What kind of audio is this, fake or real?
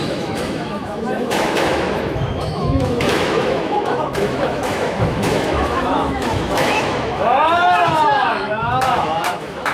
fake